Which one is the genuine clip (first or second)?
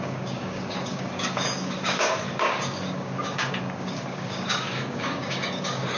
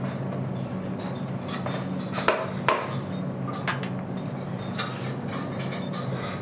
second